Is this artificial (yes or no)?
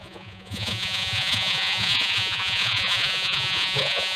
yes